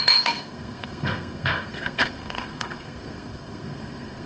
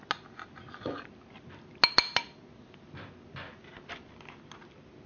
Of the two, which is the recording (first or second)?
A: second